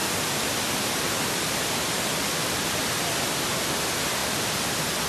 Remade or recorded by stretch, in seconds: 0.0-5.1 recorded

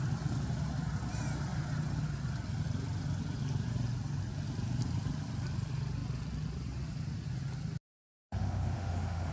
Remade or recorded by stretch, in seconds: 0.0-7.9 recorded; 7.9-9.3 remade

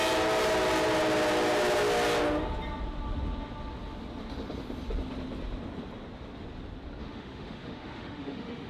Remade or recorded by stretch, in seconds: 0.0-7.0 recorded; 7.0-8.7 remade

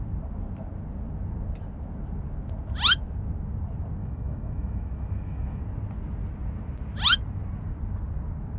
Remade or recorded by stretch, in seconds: 0.0-4.0 recorded; 4.0-5.6 remade; 5.6-8.6 recorded

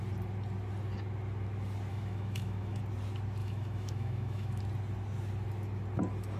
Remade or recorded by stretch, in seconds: 0.0-1.9 recorded; 1.9-2.8 remade; 2.8-3.4 recorded; 3.4-4.6 remade; 4.6-6.4 recorded

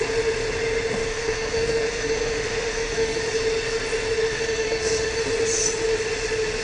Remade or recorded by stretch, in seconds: 0.0-1.0 recorded; 1.0-3.2 remade; 3.2-4.3 recorded; 4.3-5.2 remade; 5.2-6.6 recorded